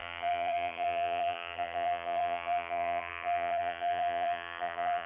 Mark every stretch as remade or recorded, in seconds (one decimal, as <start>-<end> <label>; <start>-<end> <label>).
0.0-5.1 remade